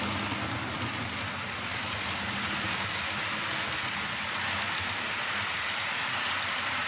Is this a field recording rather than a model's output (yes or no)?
yes